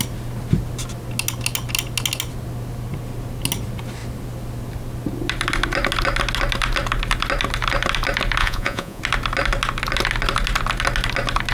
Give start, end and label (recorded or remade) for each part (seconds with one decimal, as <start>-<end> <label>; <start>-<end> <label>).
0.0-8.4 recorded; 8.4-9.0 remade; 9.0-11.5 recorded

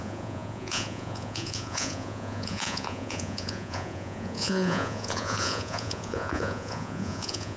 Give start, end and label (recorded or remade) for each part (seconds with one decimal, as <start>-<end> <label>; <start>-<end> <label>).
0.0-7.6 remade